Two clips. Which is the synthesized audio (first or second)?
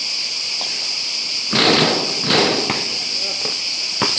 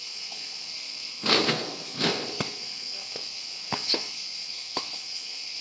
second